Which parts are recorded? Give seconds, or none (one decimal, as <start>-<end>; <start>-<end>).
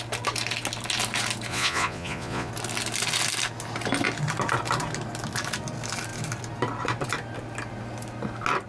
0.0-1.5; 2.5-8.7